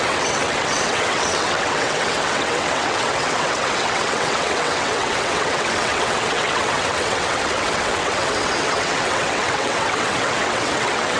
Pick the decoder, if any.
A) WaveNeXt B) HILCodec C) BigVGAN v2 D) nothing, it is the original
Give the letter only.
A